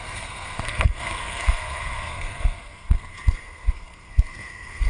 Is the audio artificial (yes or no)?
yes